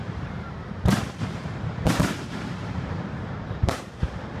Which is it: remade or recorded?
remade